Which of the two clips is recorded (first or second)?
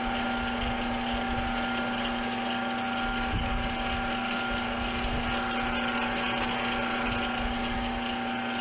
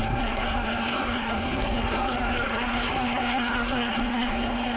first